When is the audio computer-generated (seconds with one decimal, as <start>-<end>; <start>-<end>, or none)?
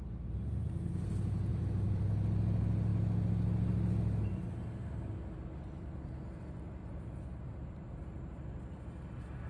1.5-2.0; 6.8-8.0